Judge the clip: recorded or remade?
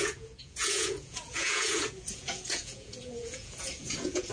remade